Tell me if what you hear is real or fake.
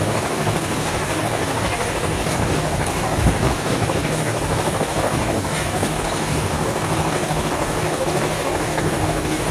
fake